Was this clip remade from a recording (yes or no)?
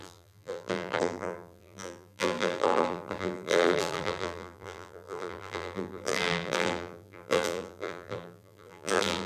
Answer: yes